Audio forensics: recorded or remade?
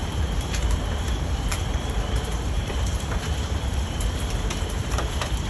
remade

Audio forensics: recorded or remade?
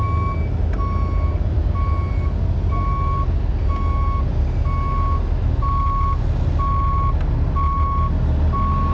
recorded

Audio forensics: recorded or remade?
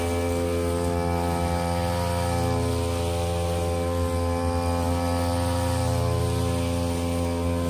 recorded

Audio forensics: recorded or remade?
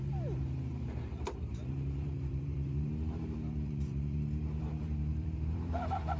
remade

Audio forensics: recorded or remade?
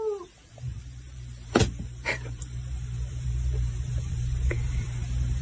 remade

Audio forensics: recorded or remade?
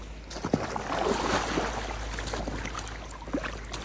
recorded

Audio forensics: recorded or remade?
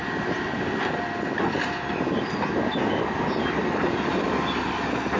recorded